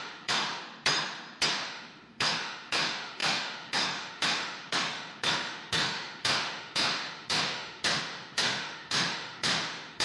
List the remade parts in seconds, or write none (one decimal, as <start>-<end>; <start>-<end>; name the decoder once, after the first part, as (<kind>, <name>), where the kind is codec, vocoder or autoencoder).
0.0-0.6 (autoencoder, DAC-VAE); 1.5-10.0